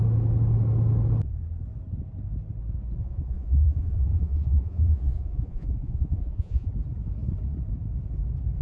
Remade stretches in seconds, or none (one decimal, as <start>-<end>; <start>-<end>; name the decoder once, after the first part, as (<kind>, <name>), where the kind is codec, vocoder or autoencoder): 3.0-6.7 (vocoder, Vocos)